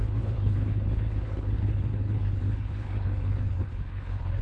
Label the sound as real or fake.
fake